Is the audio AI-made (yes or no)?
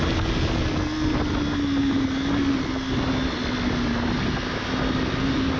no